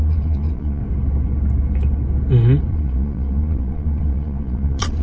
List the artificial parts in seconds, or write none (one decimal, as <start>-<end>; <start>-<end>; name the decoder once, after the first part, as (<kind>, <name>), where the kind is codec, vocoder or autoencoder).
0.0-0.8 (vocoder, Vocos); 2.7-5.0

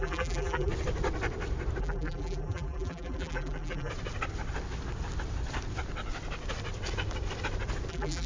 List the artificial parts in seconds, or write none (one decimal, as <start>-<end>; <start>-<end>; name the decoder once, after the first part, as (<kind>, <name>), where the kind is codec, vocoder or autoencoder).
0.0-0.7 (vocoder, BigVGAN v2); 1.8-3.9; 7.9-8.3

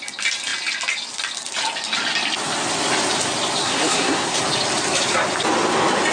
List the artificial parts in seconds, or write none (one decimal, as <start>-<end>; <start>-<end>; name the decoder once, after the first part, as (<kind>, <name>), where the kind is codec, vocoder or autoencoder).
3.6-4.4 (codec, SNAC)

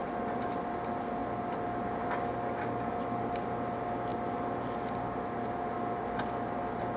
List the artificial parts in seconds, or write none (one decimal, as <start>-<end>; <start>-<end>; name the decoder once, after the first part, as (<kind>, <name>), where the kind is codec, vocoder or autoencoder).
none